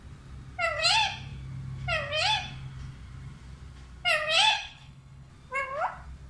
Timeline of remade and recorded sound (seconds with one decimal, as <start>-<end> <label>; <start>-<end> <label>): 0.0-4.5 recorded; 4.5-5.3 remade; 5.3-6.3 recorded